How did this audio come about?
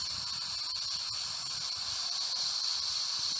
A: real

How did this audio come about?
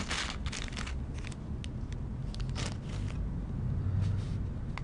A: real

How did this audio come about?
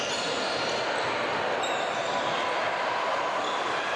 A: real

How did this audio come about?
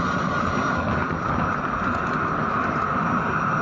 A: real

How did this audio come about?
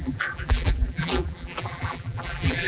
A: fake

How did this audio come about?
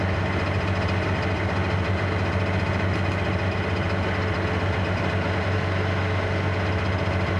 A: real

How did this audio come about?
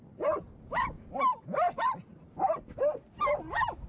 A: real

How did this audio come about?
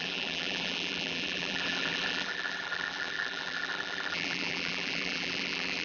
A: fake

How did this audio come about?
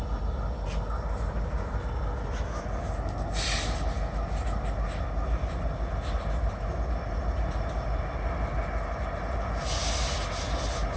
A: real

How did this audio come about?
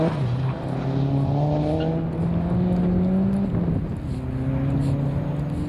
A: real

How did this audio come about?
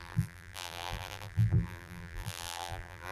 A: fake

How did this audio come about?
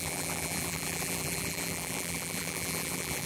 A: fake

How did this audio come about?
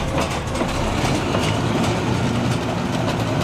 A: real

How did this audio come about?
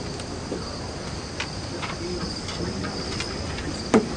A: real